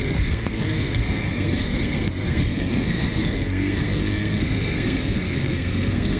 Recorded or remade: remade